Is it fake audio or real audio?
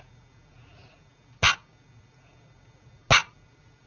real